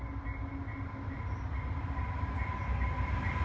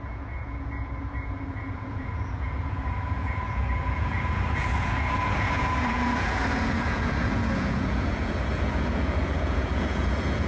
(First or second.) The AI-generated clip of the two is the second